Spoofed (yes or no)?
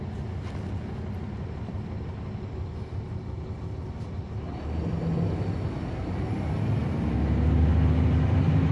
no